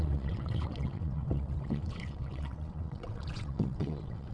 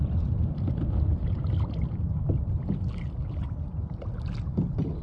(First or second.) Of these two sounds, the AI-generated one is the first